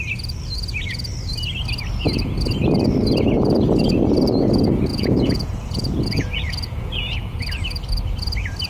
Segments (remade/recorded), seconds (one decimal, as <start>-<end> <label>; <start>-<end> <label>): 0.0-4.9 recorded; 4.9-7.4 remade; 7.4-8.7 recorded